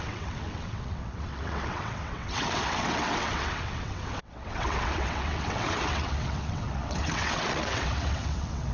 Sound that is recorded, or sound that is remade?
remade